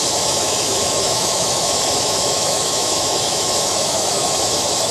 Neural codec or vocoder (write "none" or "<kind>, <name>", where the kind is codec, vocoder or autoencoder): autoencoder, DAC-VAE